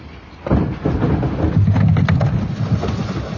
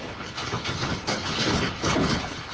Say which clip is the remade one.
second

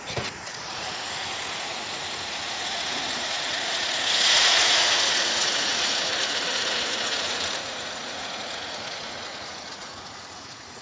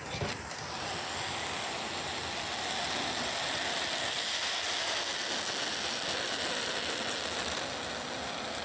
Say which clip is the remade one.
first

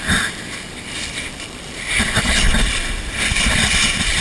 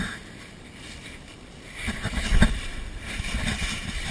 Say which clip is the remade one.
first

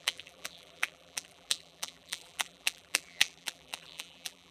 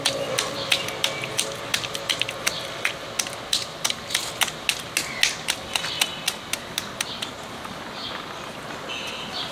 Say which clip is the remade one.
first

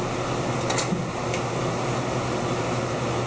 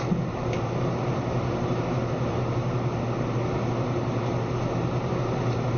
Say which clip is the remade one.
second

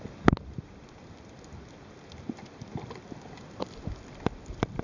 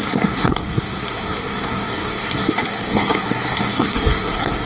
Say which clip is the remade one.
second